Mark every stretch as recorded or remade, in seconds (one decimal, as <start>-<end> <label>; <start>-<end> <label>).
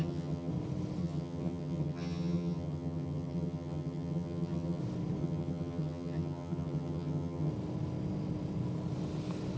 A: 0.0-0.5 remade; 0.5-1.0 recorded; 1.0-4.8 remade; 4.8-5.2 recorded; 5.2-7.5 remade; 7.5-9.6 recorded